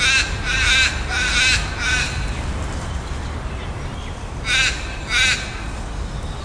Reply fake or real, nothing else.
real